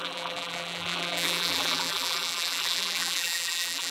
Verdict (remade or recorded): remade